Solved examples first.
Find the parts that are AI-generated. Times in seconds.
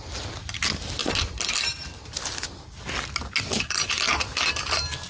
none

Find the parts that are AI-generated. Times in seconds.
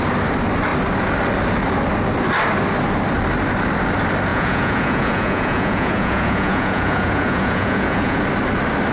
4.3-8.2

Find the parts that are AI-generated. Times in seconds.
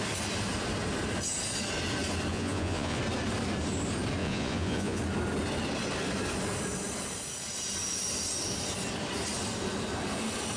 2.3-3.0; 4.2-5.0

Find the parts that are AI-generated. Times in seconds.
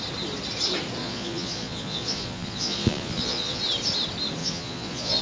1.0-3.6; 4.4-5.2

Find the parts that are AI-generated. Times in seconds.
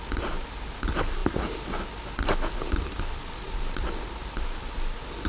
none